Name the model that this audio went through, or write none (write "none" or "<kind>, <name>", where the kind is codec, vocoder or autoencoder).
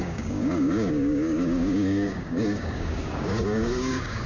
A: codec, DAC